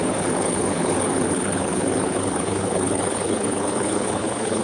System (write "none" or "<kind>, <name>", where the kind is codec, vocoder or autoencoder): codec, HILCodec